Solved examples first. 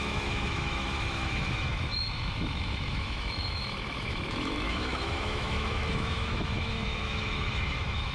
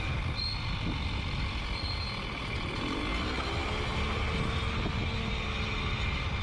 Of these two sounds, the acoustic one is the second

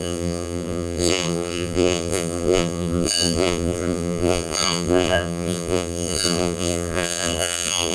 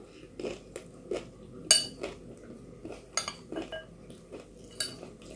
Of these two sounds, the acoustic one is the second